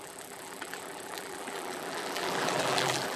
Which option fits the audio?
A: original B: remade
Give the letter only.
B